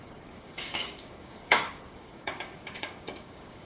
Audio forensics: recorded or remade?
remade